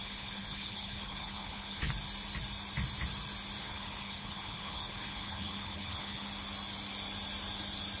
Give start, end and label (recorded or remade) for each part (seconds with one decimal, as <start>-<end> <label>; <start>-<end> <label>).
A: 0.0-1.9 remade; 1.9-3.6 recorded; 3.6-6.3 remade; 6.3-8.0 recorded